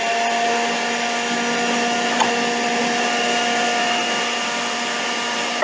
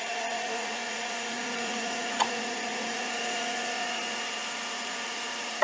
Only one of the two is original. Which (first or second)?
first